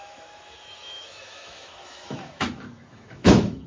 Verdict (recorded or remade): remade